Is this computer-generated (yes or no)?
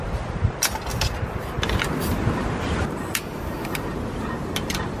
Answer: no